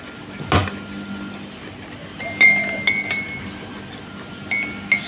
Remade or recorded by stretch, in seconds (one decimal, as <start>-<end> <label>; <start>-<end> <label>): 0.0-5.1 recorded